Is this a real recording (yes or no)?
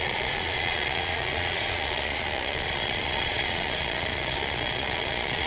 no